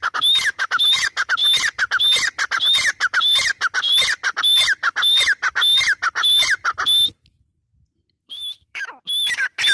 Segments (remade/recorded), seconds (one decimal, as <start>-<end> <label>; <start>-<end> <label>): 0.0-8.2 recorded; 8.2-8.9 remade; 8.9-9.7 recorded